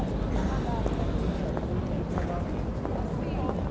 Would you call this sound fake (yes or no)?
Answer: no